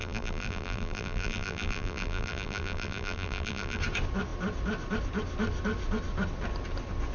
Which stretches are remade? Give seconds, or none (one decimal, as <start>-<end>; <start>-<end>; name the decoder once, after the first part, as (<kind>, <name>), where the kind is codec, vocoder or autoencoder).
0.0-3.8 (vocoder, BigVGAN v2)